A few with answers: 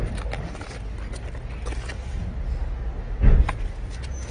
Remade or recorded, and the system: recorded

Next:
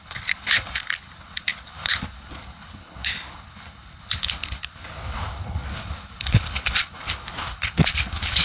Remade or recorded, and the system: remade, codec, HILCodec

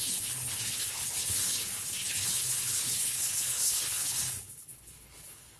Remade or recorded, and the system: remade, codec, HILCodec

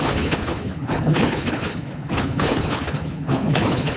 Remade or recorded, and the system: remade, codec, HILCodec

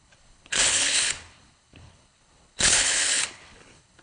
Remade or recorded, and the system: remade, codec, HILCodec